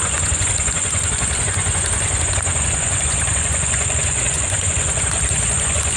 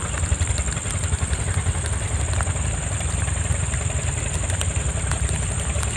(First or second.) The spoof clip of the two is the first